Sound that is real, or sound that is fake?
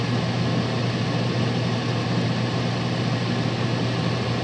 real